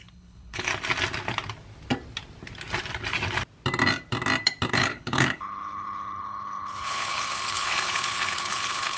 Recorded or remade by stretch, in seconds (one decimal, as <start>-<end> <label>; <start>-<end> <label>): 0.0-0.7 remade; 0.7-4.7 recorded; 4.7-9.0 remade